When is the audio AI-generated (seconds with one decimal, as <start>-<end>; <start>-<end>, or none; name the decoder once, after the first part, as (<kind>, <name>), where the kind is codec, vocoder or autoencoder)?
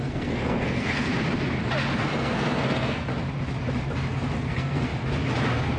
0.0-1.1 (codec, SNAC); 2.0-3.1; 4.4-4.9